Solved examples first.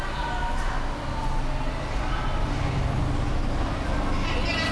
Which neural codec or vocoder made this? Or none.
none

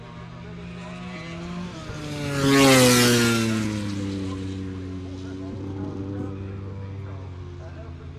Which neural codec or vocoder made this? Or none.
none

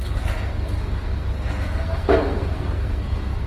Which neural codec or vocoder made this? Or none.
codec, SNAC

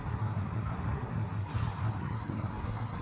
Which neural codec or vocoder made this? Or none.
codec, SNAC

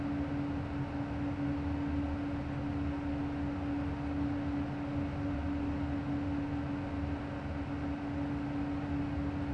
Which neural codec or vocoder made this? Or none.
none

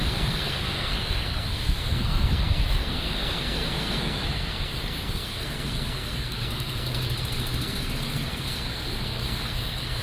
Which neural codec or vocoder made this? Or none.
codec, SNAC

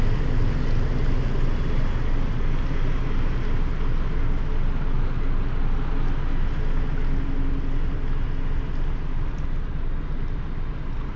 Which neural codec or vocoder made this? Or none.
none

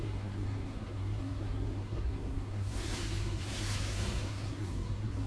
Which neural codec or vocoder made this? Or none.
codec, SNAC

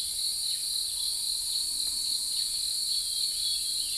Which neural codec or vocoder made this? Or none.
none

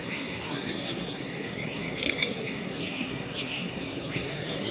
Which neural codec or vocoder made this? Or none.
codec, SNAC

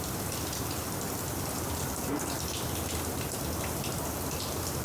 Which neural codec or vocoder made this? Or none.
none